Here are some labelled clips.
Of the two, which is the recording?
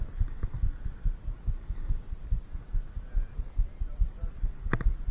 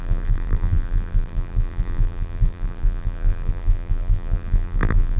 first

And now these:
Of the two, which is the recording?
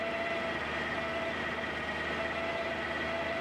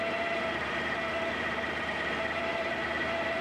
first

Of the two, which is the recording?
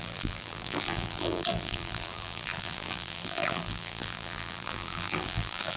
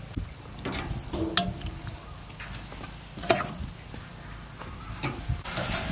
second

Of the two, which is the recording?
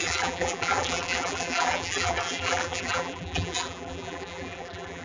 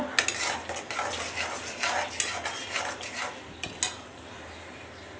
second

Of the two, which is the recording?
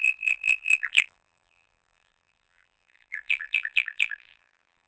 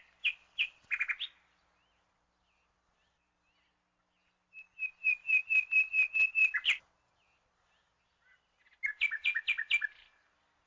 second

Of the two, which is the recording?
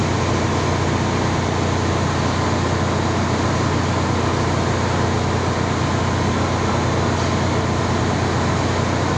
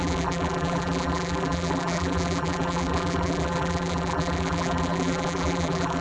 first